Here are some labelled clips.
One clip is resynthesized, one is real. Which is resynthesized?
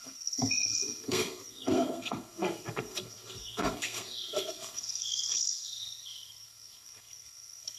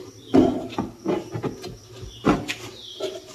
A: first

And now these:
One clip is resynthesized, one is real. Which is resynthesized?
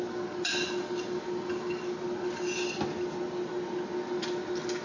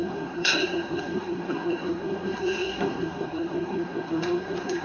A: second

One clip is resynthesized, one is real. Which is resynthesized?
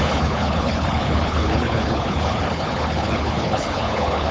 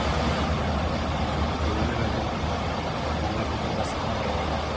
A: first